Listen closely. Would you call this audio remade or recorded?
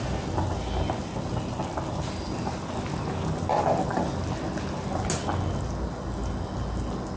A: recorded